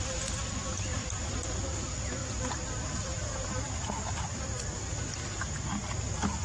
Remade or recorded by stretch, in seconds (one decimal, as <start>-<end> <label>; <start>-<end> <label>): 0.0-6.4 recorded